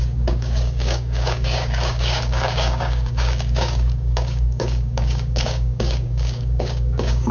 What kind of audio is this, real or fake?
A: fake